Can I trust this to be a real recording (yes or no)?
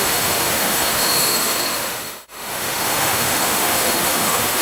no